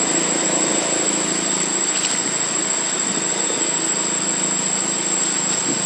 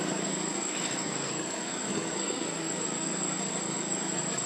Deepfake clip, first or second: second